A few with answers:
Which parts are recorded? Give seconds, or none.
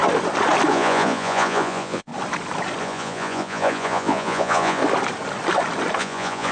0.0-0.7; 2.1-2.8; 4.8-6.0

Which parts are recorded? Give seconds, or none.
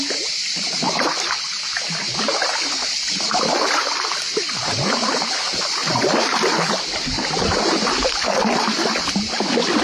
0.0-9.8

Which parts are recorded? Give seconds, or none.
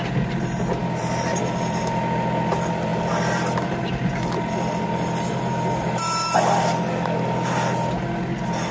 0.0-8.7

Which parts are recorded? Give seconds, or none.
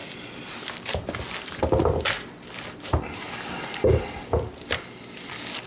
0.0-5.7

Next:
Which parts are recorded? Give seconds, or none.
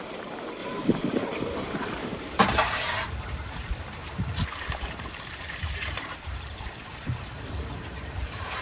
none